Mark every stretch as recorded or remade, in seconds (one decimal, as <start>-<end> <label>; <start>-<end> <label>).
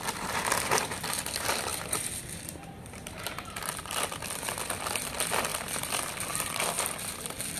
0.0-1.7 recorded; 1.7-4.7 remade; 4.7-7.6 recorded